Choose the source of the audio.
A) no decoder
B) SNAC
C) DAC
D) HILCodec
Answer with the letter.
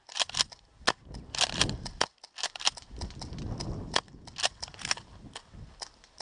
A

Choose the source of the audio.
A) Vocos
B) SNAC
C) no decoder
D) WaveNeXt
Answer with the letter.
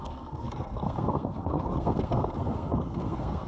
B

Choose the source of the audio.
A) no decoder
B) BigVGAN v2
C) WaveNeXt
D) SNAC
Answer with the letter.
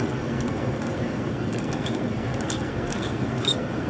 D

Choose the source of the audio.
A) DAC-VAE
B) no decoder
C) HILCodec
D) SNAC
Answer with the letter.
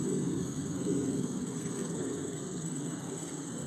D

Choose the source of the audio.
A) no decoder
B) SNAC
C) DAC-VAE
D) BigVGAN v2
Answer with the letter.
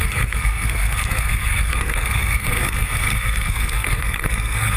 B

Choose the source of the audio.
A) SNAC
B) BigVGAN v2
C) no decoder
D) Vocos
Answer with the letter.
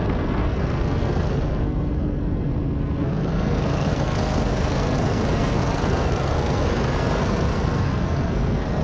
A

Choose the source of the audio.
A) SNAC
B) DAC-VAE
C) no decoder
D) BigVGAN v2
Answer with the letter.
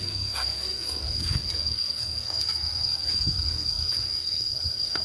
A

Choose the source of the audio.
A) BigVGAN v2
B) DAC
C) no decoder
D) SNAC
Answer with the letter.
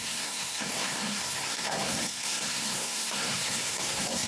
D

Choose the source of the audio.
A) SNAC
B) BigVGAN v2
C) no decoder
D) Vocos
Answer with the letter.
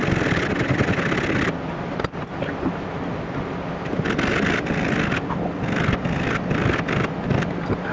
C